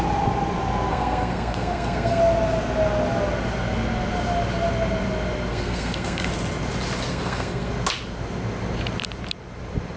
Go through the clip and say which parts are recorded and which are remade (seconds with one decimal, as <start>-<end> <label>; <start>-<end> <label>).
0.0-0.9 recorded; 0.9-2.2 remade; 2.2-5.5 recorded; 5.5-6.3 remade; 6.3-7.1 recorded; 7.1-7.7 remade; 7.7-10.0 recorded